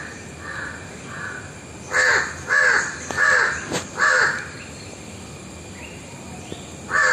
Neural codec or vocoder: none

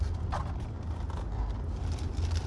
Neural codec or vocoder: none